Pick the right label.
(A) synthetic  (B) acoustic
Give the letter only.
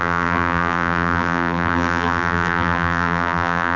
A